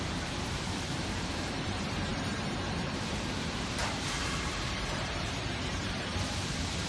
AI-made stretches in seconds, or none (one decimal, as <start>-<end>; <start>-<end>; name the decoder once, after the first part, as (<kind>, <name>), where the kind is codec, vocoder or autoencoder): 0.0-6.9 (vocoder, BigVGAN v2)